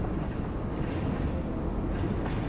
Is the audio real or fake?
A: real